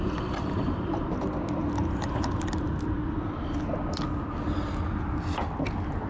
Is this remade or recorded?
recorded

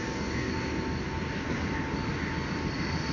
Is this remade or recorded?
recorded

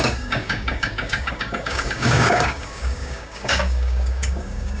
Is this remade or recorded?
remade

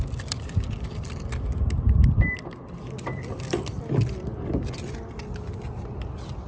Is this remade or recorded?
recorded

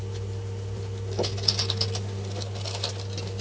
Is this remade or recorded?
recorded